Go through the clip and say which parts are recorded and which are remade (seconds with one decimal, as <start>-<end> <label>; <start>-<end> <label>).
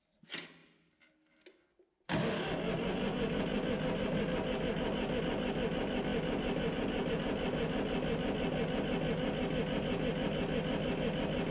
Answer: 0.0-11.5 recorded